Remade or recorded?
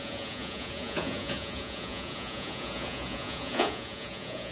remade